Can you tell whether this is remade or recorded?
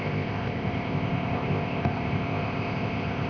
remade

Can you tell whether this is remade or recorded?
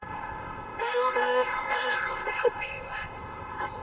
remade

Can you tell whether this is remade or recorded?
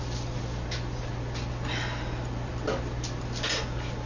recorded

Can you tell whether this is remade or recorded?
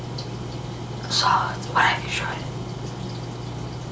recorded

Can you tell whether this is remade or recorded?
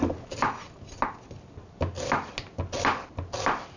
recorded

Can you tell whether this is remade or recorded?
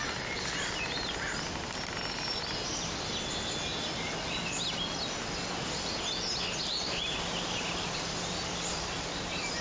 recorded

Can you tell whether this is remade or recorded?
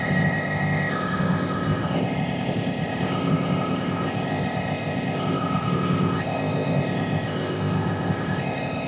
remade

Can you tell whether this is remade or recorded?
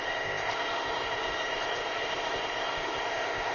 remade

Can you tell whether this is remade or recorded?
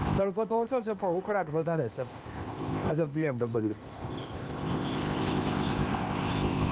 remade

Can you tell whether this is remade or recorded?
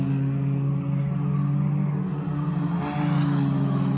recorded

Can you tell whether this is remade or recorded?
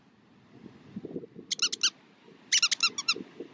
recorded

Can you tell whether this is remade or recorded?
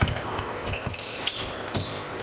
remade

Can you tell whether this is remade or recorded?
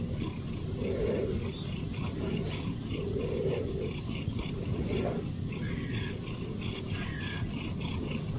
recorded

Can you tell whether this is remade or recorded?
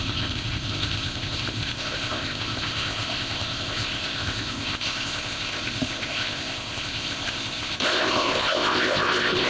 remade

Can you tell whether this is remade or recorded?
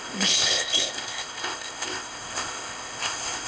remade